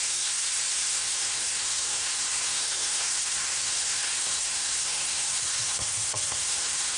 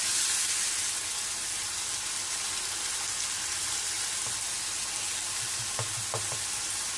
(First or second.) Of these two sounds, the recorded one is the second